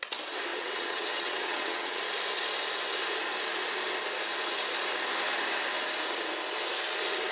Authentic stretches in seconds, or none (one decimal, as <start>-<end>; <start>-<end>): 0.0-0.5; 2.0-7.3